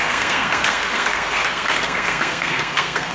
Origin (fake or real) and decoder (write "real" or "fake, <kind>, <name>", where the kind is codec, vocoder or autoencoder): fake, codec, SNAC